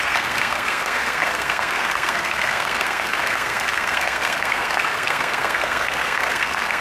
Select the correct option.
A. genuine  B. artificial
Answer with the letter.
B